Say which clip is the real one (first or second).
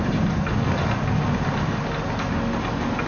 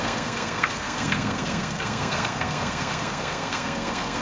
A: first